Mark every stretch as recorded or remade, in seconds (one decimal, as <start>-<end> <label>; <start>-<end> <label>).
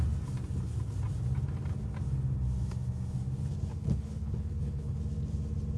0.0-3.7 recorded; 3.7-5.0 remade; 5.0-5.8 recorded